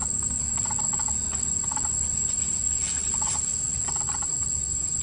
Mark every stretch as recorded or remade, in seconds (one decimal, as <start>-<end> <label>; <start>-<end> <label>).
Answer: 0.0-5.0 recorded